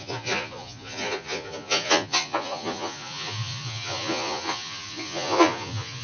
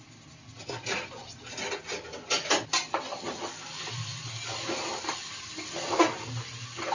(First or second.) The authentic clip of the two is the second